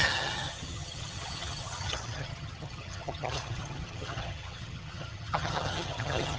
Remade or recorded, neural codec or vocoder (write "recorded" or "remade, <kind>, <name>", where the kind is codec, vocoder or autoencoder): remade, vocoder, HiFi-GAN